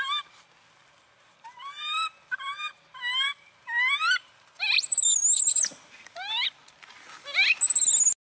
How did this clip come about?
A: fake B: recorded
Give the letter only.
B